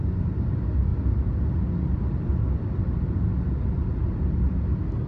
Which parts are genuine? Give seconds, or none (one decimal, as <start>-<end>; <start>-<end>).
0.0-5.1